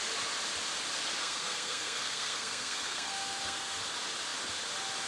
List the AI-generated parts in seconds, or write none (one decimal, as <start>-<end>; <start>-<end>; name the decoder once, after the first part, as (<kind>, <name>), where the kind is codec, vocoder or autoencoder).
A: 1.2-3.8 (codec, SNAC)